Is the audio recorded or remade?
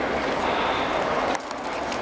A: remade